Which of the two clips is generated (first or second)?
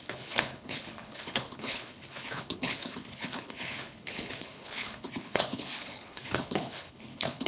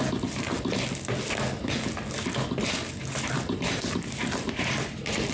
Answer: first